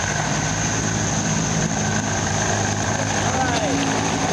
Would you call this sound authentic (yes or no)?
yes